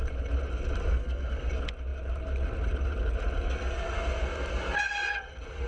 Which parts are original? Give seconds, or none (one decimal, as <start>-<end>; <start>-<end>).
0.0-0.9; 1.5-5.7